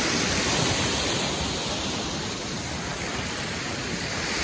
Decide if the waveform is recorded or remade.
recorded